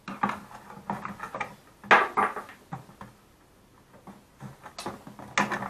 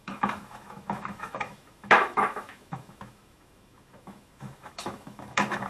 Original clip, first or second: first